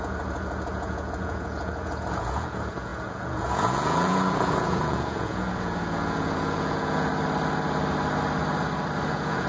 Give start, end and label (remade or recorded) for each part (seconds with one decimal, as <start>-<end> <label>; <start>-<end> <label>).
0.0-7.1 remade; 7.1-9.1 recorded; 9.1-9.5 remade